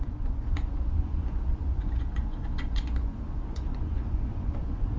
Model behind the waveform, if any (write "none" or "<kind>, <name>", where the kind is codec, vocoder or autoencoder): vocoder, Vocos